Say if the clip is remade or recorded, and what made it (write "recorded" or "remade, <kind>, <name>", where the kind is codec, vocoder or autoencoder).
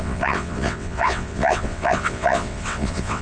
remade, vocoder, WaveNeXt